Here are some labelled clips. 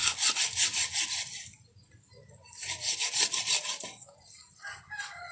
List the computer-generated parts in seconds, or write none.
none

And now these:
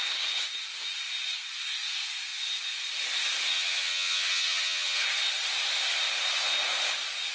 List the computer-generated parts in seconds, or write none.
3.5-5.0 (vocoder, HiFi-GAN)

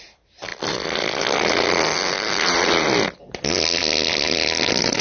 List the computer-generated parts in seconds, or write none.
none

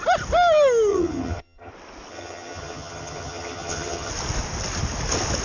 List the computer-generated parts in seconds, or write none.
0.9-1.7 (vocoder, HiFi-GAN); 2.1-4.1

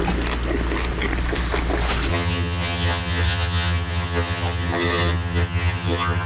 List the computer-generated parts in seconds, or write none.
2.1-6.3 (vocoder, HiFi-GAN)

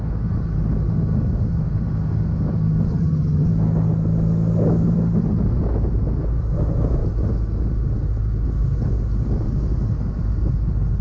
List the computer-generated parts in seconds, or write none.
2.9-3.5 (vocoder, HiFi-GAN)